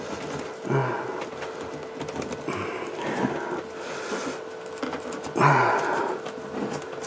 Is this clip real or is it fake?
real